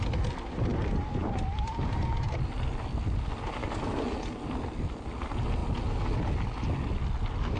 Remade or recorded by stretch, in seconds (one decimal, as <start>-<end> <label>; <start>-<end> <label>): 0.0-7.6 recorded